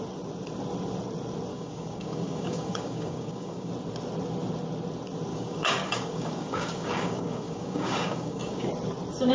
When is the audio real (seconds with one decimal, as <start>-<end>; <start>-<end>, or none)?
0.0-1.5; 3.7-5.3; 8.7-9.3